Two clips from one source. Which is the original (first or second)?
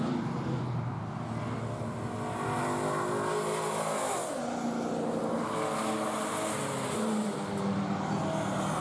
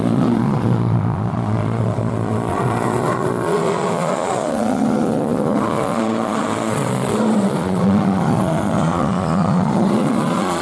first